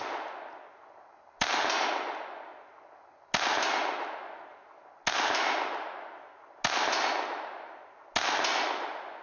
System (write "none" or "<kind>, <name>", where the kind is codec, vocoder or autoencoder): none